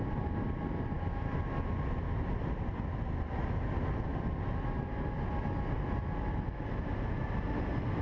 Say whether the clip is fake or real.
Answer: real